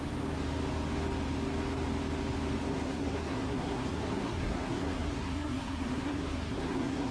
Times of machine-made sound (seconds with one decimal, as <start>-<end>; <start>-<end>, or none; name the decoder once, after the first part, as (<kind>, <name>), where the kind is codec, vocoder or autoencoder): 2.7-7.1 (codec, SNAC)